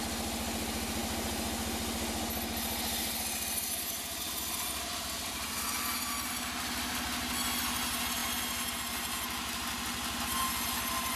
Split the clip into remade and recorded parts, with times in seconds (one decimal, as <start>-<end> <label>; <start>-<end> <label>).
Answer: 0.0-11.2 recorded